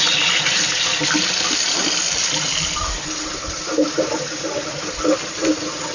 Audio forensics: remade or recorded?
recorded